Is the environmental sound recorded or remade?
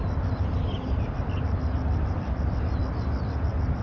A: recorded